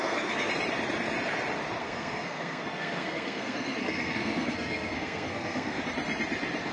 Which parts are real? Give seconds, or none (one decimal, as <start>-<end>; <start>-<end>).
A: 0.5-1.8; 5.8-6.7